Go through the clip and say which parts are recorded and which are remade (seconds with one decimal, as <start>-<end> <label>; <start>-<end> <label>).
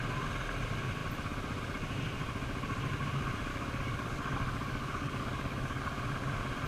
0.0-3.5 recorded; 3.5-5.8 remade; 5.8-6.7 recorded